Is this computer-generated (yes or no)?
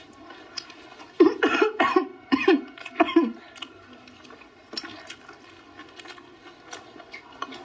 no